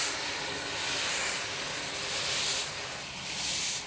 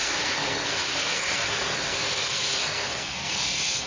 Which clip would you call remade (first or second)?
second